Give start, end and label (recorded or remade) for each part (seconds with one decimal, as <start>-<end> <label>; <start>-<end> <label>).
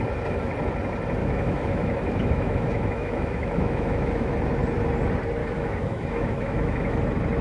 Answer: 0.0-1.2 recorded; 1.2-4.3 remade; 4.3-5.4 recorded; 5.4-7.0 remade; 7.0-7.4 recorded